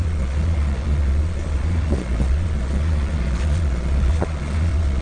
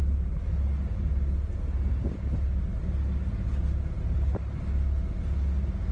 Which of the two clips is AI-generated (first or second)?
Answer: first